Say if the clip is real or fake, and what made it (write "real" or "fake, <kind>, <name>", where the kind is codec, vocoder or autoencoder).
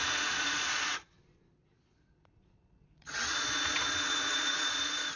fake, vocoder, Vocos